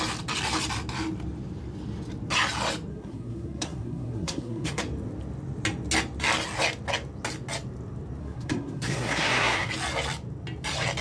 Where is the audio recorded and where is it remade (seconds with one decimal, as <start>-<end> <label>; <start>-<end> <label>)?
0.0-2.9 recorded; 2.9-4.8 remade; 4.8-8.2 recorded; 8.2-9.7 remade; 9.7-11.0 recorded